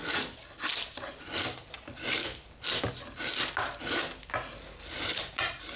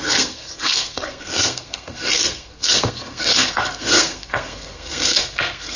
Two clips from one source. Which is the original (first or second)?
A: first